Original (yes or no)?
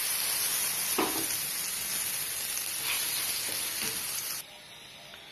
yes